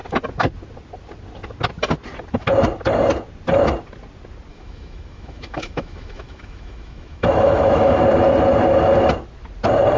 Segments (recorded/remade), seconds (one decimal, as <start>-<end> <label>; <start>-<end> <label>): 0.0-4.5 recorded; 4.5-8.0 remade; 8.0-10.0 recorded